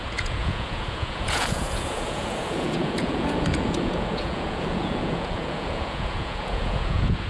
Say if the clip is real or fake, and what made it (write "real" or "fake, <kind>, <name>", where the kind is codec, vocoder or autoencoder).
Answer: fake, vocoder, Vocos